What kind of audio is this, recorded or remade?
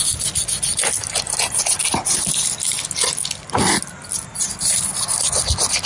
recorded